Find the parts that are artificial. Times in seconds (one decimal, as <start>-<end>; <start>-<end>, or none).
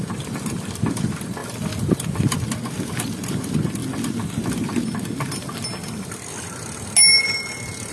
none